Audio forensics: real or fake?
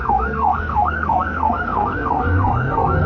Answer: fake